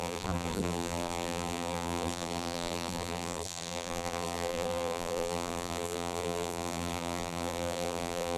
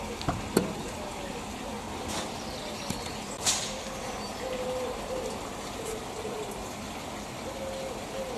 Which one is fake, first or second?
first